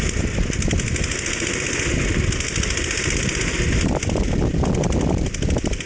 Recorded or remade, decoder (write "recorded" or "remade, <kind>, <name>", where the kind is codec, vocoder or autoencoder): recorded